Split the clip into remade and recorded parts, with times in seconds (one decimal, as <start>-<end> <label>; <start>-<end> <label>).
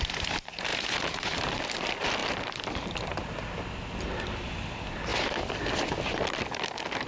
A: 0.0-0.7 recorded; 0.7-1.6 remade; 1.6-2.2 recorded; 2.2-2.9 remade; 2.9-5.1 recorded; 5.1-6.6 remade; 6.6-7.1 recorded